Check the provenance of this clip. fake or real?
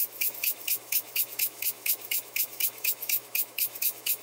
fake